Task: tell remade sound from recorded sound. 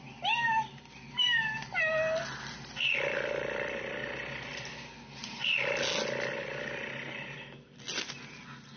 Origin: recorded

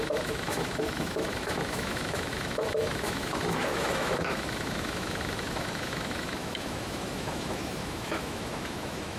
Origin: remade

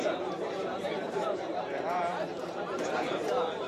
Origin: remade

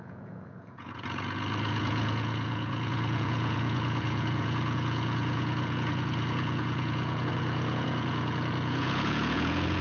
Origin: remade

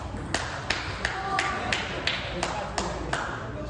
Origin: recorded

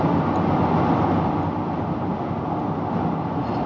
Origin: recorded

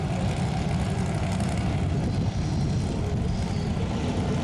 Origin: recorded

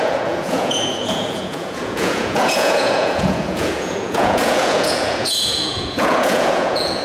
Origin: remade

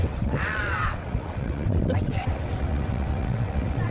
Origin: remade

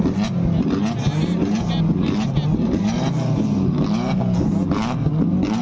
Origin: recorded